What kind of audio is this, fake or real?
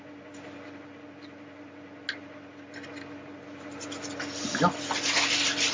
real